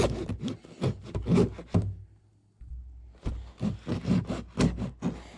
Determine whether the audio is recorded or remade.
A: recorded